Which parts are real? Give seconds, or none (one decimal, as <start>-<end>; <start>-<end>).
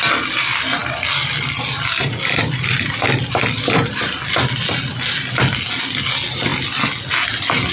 0.0-7.7